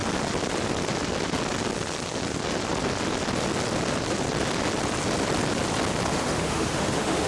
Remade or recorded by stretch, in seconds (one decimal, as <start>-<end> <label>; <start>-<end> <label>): 0.0-6.1 recorded; 6.1-7.3 remade